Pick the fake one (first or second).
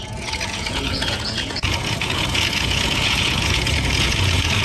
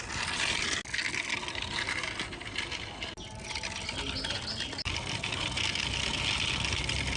first